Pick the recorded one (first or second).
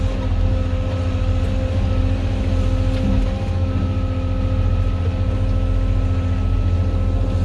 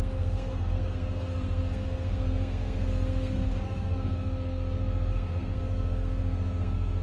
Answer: first